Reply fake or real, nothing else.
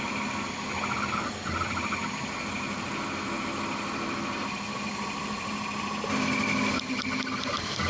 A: real